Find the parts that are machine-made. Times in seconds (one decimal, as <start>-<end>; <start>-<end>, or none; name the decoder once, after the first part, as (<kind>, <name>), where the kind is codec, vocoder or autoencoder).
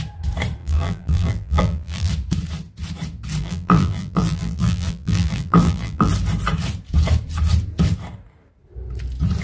0.6-2.1 (vocoder, BigVGAN v2); 3.4-6.1